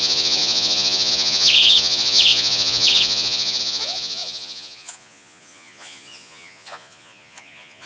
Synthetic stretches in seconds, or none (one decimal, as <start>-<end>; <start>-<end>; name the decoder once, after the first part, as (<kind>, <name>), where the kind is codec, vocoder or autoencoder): 0.0-7.9 (vocoder, Vocos)